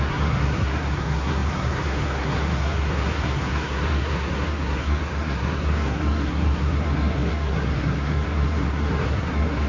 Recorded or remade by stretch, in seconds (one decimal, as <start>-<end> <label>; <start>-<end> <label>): 0.0-9.7 remade